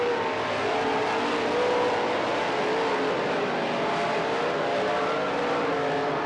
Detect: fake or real real